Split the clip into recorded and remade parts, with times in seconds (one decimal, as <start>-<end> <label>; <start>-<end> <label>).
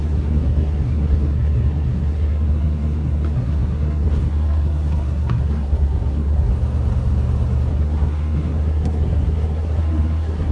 0.0-6.5 remade; 6.5-7.7 recorded; 7.7-10.5 remade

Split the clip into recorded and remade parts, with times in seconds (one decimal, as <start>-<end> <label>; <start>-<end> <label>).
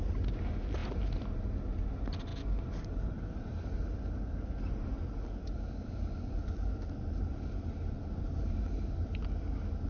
0.0-9.9 recorded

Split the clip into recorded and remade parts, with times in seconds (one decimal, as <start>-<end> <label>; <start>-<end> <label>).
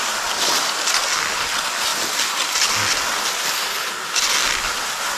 0.0-5.2 recorded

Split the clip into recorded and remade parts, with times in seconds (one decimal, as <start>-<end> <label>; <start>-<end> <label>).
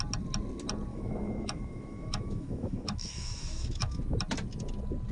0.0-0.9 recorded; 0.9-4.0 remade; 4.0-5.1 recorded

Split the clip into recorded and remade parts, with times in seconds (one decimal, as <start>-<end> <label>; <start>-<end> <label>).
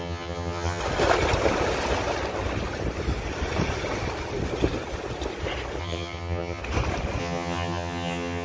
0.0-0.8 remade; 0.8-5.8 recorded; 5.8-6.6 remade; 6.6-7.2 recorded; 7.2-8.4 remade